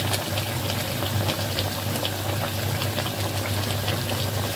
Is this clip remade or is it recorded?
recorded